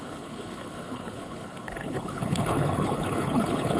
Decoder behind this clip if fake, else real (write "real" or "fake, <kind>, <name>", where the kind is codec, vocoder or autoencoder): fake, codec, HILCodec